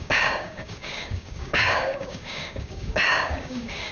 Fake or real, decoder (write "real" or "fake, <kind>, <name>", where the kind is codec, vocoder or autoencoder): fake, codec, DAC